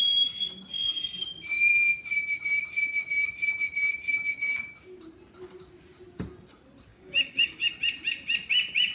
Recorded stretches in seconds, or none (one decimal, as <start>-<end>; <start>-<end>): 0.0-6.9; 7.7-8.9